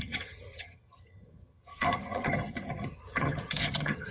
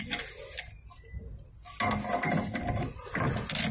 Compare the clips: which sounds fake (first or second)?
first